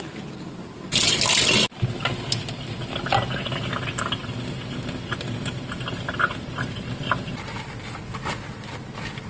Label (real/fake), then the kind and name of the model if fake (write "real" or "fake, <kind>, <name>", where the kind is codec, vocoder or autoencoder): real